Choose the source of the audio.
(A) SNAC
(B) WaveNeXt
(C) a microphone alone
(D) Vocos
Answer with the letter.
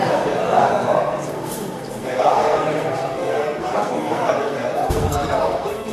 A